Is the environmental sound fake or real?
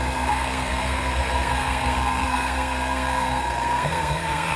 fake